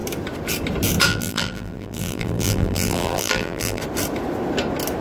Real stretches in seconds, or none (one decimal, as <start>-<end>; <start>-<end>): 0.0-1.1; 3.8-5.0

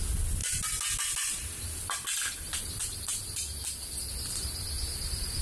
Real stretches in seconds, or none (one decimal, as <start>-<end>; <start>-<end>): 0.0-5.4

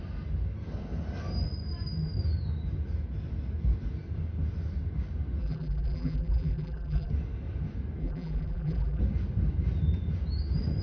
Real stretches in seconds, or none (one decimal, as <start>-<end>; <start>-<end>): 0.0-5.4; 7.1-8.0; 9.0-10.8

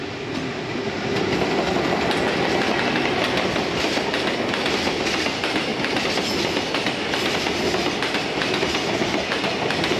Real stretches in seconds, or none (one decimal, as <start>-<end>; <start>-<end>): 0.0-10.0